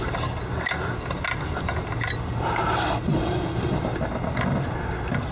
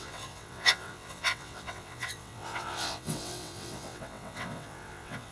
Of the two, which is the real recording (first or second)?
first